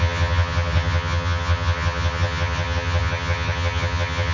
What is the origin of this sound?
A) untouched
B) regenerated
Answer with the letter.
B